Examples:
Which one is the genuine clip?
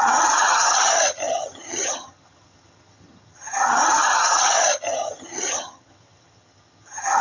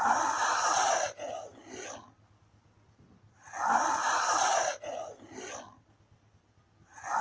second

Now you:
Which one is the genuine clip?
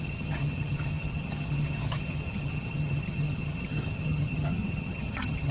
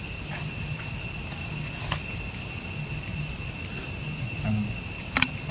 second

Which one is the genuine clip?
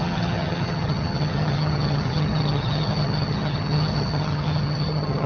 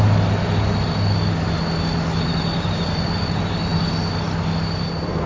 second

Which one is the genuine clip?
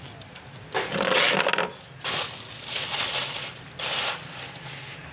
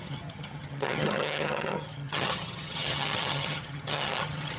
first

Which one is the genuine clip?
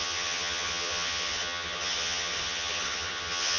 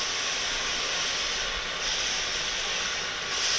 second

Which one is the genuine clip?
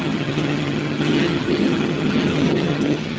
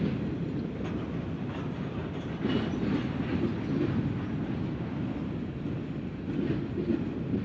second